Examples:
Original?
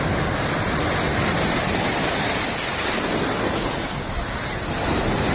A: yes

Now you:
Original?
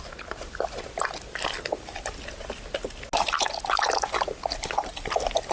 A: yes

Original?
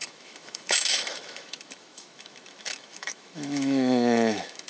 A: no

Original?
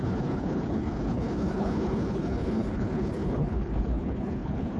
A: no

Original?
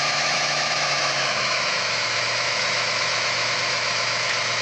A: no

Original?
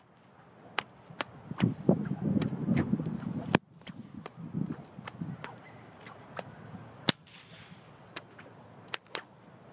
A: yes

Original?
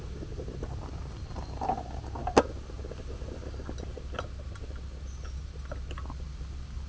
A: yes